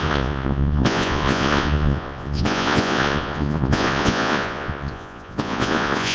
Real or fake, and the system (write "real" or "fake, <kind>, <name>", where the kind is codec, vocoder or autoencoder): fake, vocoder, Vocos